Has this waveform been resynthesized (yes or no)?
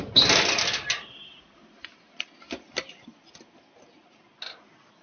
no